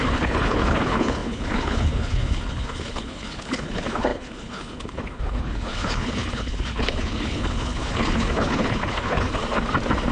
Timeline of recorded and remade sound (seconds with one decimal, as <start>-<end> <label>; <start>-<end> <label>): 0.0-9.4 remade; 9.4-10.1 recorded